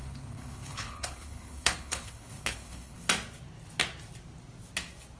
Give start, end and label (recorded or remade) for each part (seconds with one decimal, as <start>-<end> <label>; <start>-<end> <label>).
0.0-3.1 remade; 3.1-5.2 recorded